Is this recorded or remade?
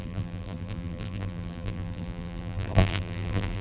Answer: remade